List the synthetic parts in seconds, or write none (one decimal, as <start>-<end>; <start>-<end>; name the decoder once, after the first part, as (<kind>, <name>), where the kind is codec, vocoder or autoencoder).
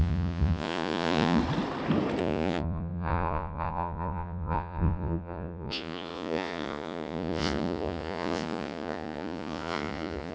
0.0-1.4 (vocoder, Vocos); 2.2-10.3